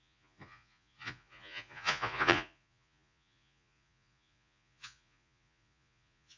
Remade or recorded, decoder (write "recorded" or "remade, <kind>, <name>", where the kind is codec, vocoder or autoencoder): remade, vocoder, Vocos